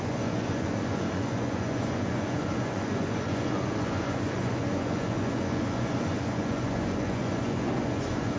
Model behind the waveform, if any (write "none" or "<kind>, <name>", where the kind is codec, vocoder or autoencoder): vocoder, Vocos